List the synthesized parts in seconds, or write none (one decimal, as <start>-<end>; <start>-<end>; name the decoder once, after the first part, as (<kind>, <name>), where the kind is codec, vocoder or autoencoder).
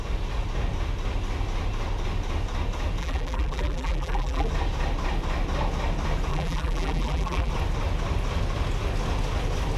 3.0-4.5 (vocoder, BigVGAN v2); 6.3-7.5